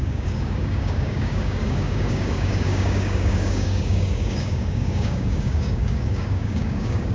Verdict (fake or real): fake